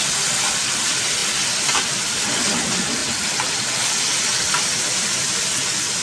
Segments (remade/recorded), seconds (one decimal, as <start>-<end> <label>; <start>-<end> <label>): 0.0-6.0 recorded